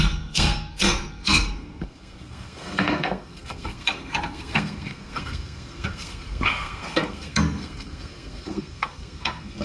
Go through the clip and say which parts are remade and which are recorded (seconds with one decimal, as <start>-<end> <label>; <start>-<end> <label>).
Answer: 0.0-9.6 remade